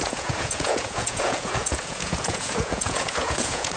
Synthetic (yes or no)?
yes